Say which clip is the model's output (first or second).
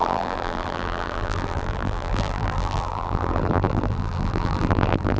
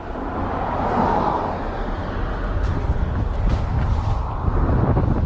first